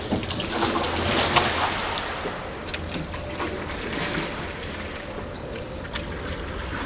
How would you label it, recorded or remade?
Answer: recorded